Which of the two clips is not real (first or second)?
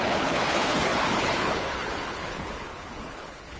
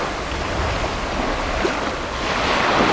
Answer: first